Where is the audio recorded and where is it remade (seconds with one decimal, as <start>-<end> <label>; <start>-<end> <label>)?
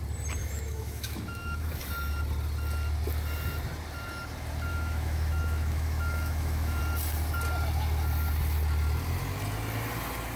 0.0-0.4 recorded; 0.4-1.8 remade; 1.8-4.7 recorded; 4.7-6.8 remade; 6.8-10.4 recorded